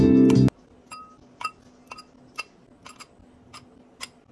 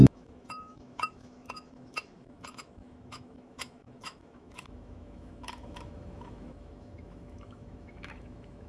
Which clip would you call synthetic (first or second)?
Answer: second